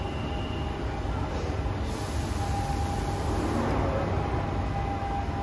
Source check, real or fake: real